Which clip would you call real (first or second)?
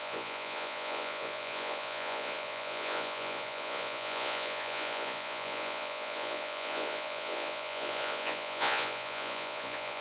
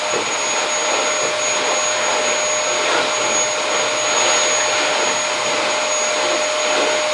second